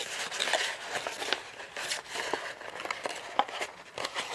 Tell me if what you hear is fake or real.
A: real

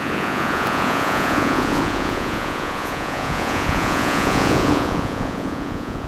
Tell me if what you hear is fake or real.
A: fake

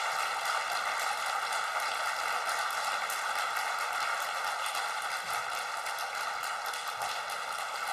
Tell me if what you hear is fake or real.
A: real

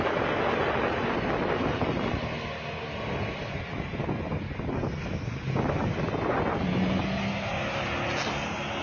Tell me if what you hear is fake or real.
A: real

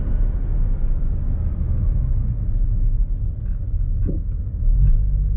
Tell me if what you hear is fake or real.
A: real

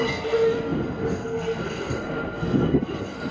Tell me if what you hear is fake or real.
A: fake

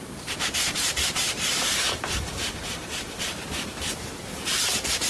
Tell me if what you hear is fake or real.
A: fake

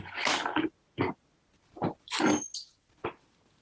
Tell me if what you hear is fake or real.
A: real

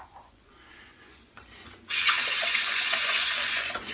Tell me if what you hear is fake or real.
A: fake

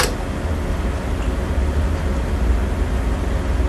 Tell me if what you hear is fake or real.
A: real